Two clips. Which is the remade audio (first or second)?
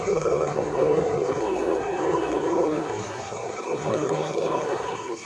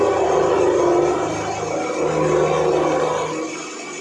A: first